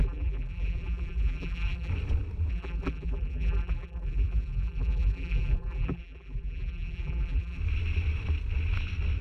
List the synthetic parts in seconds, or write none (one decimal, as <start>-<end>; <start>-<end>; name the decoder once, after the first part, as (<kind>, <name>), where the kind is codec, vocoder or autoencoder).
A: 0.0-1.9 (vocoder, BigVGAN v2); 2.5-7.6

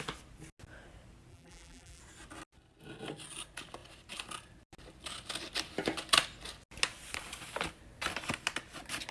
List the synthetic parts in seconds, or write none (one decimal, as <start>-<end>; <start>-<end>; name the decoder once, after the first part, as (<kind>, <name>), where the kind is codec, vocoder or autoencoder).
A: 1.3-2.0 (vocoder, BigVGAN v2)